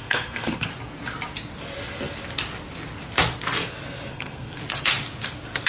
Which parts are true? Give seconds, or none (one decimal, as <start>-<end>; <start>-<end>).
0.7-4.1; 4.6-5.7